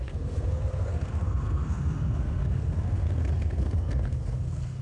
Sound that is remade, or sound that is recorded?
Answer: remade